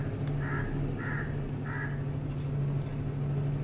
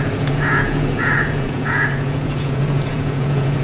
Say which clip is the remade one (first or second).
second